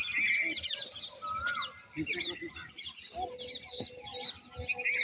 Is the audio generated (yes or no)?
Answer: no